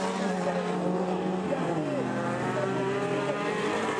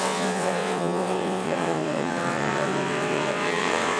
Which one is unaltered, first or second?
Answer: first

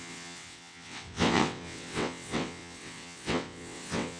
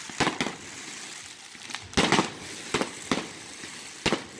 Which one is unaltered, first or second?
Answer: second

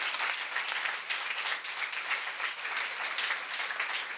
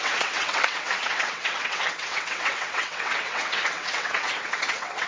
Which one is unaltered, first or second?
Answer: first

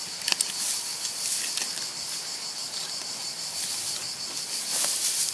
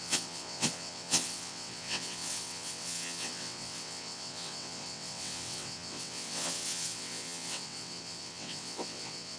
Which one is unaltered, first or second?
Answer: first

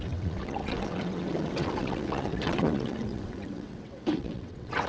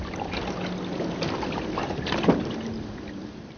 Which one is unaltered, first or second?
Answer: second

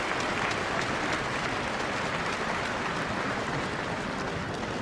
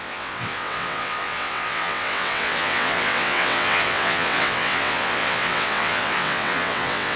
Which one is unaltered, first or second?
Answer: first